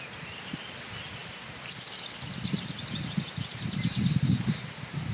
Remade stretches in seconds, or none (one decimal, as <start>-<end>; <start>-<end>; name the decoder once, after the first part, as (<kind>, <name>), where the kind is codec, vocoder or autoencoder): none